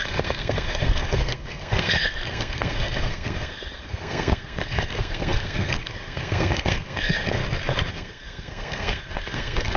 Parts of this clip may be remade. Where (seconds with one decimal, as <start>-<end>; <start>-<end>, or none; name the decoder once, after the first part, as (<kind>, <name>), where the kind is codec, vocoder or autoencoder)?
0.0-7.4 (codec, SNAC); 7.9-9.8